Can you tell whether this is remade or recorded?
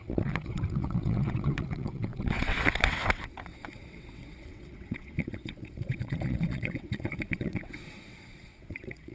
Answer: remade